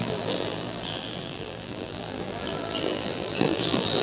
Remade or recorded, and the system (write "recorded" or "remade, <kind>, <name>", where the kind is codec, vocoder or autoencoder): remade, vocoder, BigVGAN v2